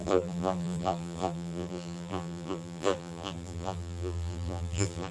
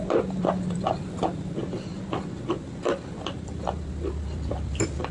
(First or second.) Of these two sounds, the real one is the second